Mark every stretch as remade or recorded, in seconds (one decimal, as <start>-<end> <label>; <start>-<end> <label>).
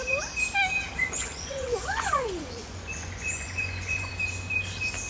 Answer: 0.0-1.0 recorded; 1.0-4.1 remade; 4.1-5.1 recorded